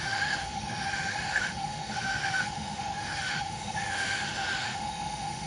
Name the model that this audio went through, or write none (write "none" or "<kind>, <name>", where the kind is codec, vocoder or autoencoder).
autoencoder, DAC-VAE